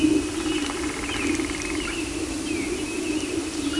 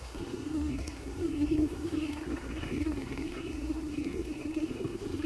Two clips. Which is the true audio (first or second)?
first